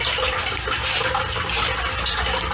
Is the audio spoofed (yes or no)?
no